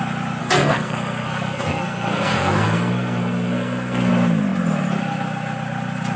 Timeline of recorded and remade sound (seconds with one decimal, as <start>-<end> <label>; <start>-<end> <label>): 0.0-0.4 recorded; 0.4-4.1 remade; 4.1-6.2 recorded